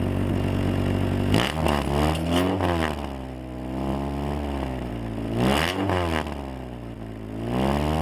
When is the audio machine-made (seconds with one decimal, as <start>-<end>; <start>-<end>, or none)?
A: none

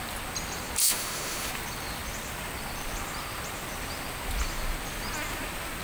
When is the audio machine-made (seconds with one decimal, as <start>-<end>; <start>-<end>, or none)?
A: 0.8-1.5

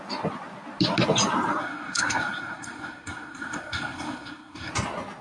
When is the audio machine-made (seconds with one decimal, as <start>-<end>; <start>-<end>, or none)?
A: 1.6-4.7

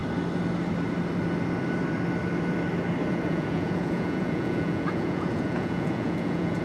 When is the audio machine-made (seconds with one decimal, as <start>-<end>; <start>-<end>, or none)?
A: 3.1-6.6

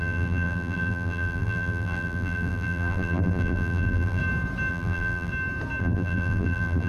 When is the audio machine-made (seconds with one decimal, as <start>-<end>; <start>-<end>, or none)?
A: 0.0-4.2; 4.7-5.3; 5.8-6.9